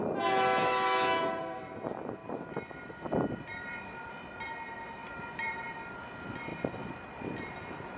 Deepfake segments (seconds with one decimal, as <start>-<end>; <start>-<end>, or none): 2.2-4.1; 5.0-5.9; 6.5-8.0